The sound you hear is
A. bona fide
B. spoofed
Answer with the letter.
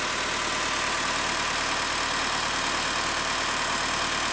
A